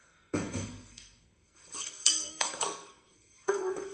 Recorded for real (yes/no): no